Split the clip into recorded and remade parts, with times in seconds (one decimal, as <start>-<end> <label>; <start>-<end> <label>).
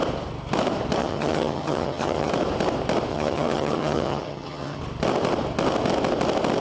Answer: 0.0-1.0 recorded; 1.0-2.3 remade; 2.3-3.1 recorded; 3.1-4.8 remade; 4.8-6.6 recorded